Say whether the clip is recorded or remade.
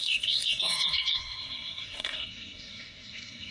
remade